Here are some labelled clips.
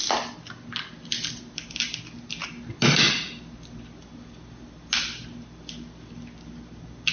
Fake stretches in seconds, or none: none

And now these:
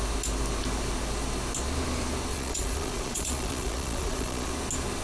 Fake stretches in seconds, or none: 2.3-4.5 (vocoder, Vocos)

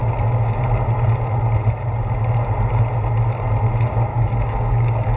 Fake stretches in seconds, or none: 4.1-5.2 (codec, DAC)

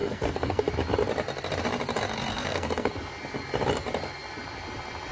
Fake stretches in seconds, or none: 0.0-0.7 (codec, SNAC); 2.3-2.9